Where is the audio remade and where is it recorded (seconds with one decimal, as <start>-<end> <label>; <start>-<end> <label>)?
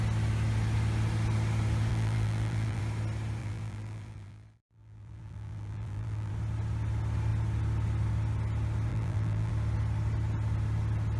0.0-1.9 recorded; 1.9-2.8 remade; 2.8-3.4 recorded; 3.4-6.3 remade; 6.3-8.9 recorded; 8.9-9.5 remade; 9.5-11.2 recorded